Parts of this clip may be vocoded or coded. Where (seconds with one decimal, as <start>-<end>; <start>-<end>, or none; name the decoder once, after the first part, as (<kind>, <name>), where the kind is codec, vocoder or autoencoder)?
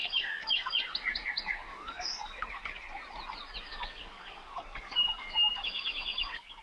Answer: 0.0-0.7 (codec, DAC); 1.7-2.4; 3.7-6.6